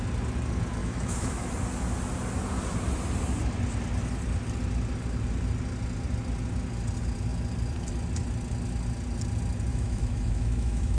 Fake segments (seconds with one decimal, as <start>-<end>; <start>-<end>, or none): 0.8-1.5; 9.7-11.0